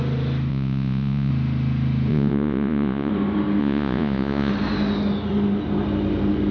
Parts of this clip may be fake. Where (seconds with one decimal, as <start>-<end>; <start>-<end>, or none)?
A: 0.5-1.3; 2.1-3.1; 3.6-4.5